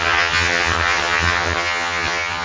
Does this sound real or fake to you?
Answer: fake